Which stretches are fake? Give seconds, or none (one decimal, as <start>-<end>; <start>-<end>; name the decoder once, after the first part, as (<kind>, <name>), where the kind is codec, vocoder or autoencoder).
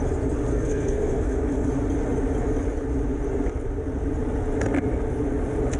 0.5-1.7 (codec, SNAC)